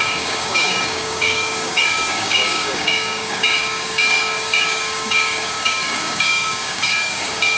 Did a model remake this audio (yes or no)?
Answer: yes